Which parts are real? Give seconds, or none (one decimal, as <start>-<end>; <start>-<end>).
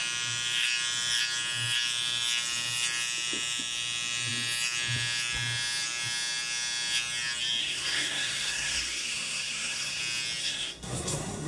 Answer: 0.0-7.6; 10.0-10.4